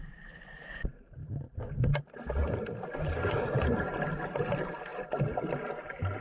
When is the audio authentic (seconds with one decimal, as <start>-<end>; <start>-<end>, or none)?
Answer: 0.0-1.2; 2.0-2.4; 3.9-6.2